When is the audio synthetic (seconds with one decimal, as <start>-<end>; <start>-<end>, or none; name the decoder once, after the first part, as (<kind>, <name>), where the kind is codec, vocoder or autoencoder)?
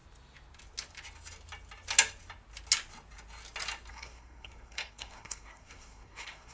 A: 3.9-6.5 (codec, SNAC)